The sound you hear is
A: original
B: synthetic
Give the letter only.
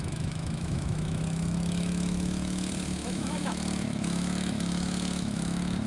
B